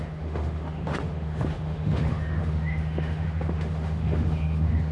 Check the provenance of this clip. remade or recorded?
remade